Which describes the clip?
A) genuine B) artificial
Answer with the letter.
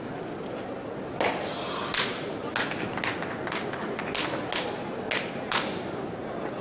A